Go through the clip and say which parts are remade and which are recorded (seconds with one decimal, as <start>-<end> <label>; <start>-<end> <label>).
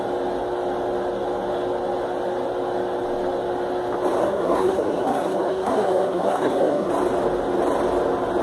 0.0-4.2 recorded; 4.2-6.9 remade; 6.9-8.4 recorded